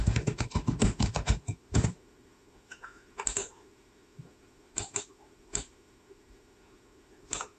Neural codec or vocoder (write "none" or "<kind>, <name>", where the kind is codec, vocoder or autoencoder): autoencoder, DAC-VAE